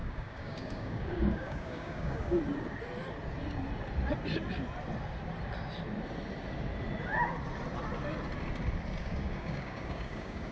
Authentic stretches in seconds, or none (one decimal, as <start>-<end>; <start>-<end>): 2.4-9.0